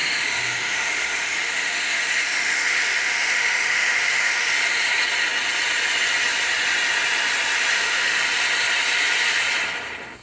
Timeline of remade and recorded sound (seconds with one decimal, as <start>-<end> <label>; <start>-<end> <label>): 0.0-4.5 remade; 4.5-7.7 recorded; 7.7-8.2 remade; 8.2-10.2 recorded